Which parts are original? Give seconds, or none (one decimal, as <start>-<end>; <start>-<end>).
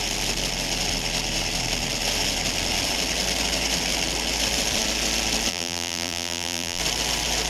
0.0-5.5; 6.8-7.5